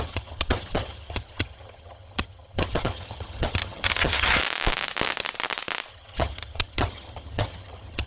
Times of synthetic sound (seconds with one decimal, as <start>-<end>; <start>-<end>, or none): 0.0-4.4; 5.9-8.1